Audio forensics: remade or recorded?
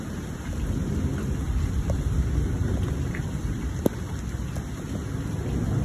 recorded